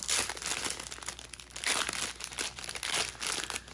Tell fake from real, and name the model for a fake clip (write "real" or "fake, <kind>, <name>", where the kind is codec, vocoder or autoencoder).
real